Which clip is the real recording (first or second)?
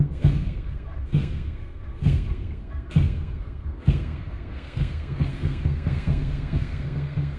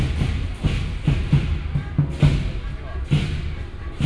second